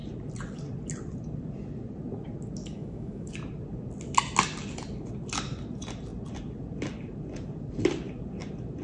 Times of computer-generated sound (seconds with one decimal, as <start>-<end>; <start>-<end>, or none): 2.6-3.3